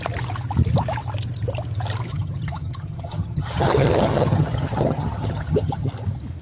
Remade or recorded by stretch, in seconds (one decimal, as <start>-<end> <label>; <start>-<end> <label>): 0.0-2.1 recorded; 2.1-5.9 remade; 5.9-6.4 recorded